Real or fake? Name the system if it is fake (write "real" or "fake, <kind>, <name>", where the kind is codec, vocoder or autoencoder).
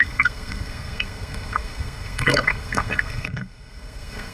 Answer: fake, codec, SNAC